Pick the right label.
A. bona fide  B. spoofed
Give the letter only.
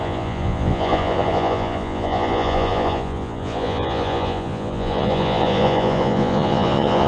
B